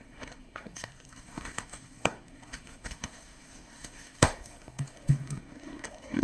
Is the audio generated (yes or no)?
yes